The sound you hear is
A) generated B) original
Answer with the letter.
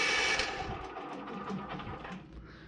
B